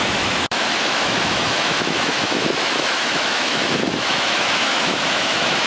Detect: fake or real fake